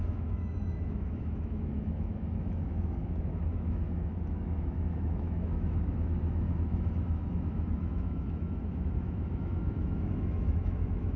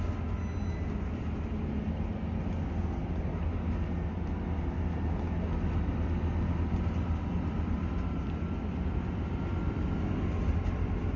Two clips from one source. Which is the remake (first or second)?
first